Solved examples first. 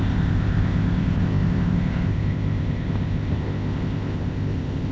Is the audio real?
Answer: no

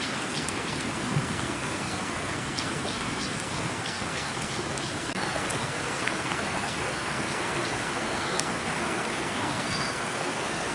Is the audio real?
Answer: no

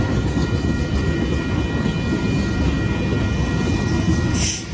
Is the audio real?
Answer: yes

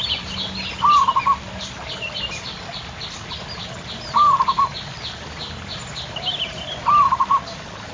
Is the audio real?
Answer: yes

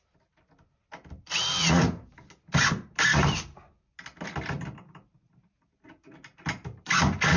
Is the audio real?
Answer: yes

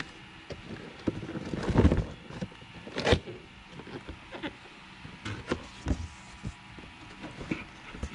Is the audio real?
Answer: yes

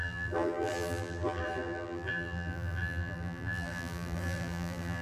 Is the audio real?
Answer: no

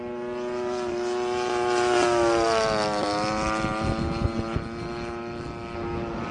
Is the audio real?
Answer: yes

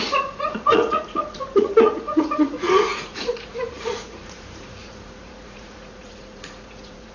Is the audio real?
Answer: no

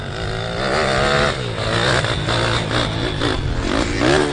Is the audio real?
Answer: yes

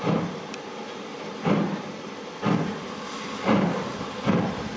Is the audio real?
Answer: yes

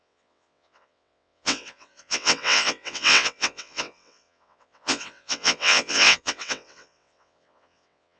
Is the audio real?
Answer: no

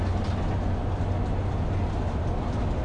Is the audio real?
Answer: yes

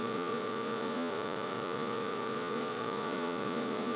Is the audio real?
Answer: no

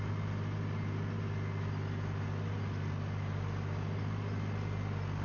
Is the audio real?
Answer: yes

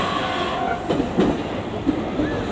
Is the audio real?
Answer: yes